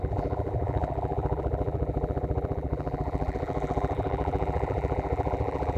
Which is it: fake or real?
fake